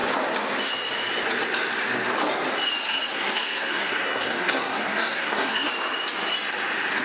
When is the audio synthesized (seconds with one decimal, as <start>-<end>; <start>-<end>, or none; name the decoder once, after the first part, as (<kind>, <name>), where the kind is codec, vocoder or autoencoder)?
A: 2.8-5.7 (codec, SNAC)